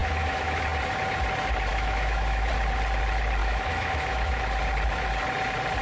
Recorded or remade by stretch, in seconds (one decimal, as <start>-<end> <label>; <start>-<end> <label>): 0.0-0.6 remade; 0.6-1.7 recorded; 1.7-2.5 remade; 2.5-3.4 recorded; 3.4-4.4 remade; 4.4-5.8 recorded